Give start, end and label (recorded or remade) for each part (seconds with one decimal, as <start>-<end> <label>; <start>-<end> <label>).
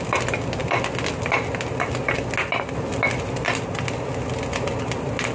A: 0.0-5.3 recorded